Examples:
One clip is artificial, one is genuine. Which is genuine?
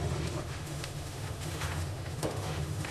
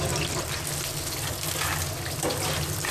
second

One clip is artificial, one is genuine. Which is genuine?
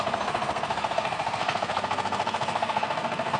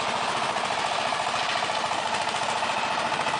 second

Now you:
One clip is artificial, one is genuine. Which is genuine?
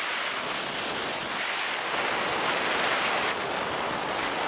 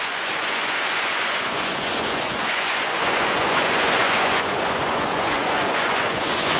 first